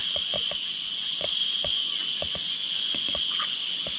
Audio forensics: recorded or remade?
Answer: remade